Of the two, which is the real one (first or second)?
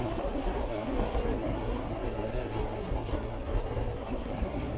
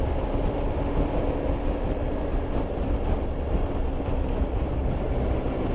second